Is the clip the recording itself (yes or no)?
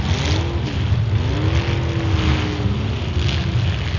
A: yes